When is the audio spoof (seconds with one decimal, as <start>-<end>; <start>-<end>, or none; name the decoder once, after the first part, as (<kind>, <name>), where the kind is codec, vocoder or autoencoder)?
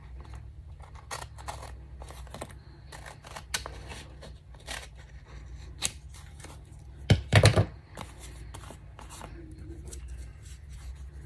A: 10.3-10.9 (vocoder, BigVGAN v2)